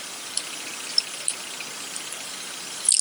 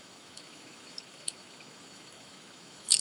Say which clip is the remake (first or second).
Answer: second